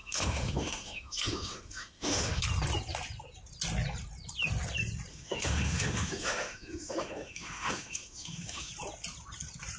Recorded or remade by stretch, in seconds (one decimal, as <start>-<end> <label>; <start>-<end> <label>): 0.0-2.4 remade; 2.4-5.1 recorded; 5.1-8.7 remade; 8.7-9.8 recorded